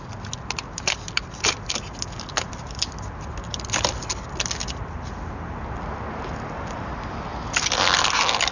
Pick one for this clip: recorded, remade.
recorded